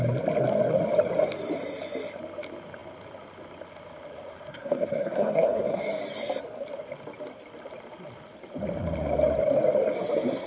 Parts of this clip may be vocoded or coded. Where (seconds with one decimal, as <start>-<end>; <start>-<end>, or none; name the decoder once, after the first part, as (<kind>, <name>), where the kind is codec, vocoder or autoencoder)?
4.5-5.8 (codec, SNAC)